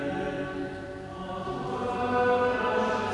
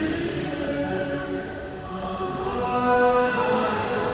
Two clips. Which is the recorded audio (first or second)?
first